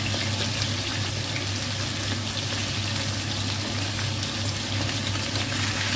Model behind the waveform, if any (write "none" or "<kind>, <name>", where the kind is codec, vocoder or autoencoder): none